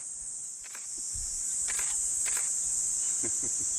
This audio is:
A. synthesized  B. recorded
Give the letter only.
B